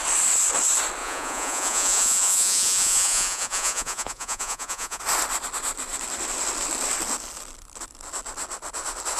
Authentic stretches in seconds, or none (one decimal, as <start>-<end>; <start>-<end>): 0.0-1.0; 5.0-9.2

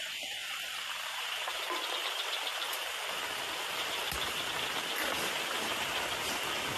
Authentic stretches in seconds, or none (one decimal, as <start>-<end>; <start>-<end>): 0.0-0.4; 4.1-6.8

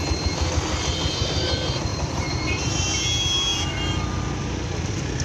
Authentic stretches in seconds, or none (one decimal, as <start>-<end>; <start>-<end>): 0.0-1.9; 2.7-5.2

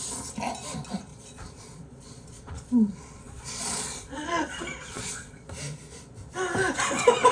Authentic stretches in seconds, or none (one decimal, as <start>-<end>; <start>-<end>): 0.0-1.1; 5.5-7.3